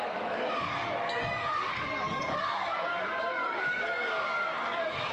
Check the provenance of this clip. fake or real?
fake